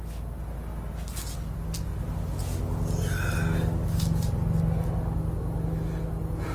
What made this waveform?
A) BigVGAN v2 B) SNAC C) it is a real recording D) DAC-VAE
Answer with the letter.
C